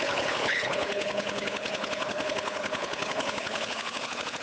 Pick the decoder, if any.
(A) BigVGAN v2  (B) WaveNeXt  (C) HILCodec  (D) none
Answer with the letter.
C